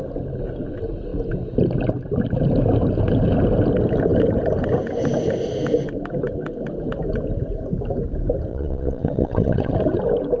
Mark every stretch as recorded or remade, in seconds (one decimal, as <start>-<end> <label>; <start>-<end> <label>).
0.0-8.5 recorded; 8.5-9.7 remade; 9.7-10.4 recorded

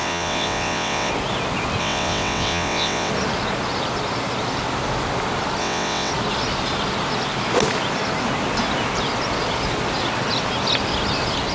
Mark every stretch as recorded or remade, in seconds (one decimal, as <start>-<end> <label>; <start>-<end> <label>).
0.0-1.1 remade; 1.1-1.8 recorded; 1.8-3.1 remade; 3.1-5.6 recorded; 5.6-6.1 remade; 6.1-11.5 recorded

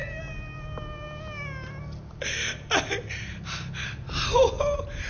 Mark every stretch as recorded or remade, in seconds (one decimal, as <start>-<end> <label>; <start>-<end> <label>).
0.0-5.1 recorded

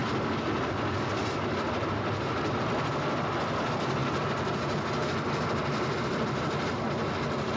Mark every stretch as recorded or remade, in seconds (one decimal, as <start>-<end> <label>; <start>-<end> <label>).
0.0-7.6 recorded

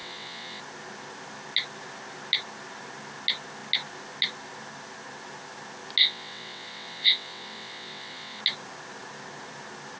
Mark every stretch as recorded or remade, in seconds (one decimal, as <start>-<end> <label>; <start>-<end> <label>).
0.0-0.6 remade; 0.6-6.0 recorded; 6.0-8.4 remade; 8.4-10.0 recorded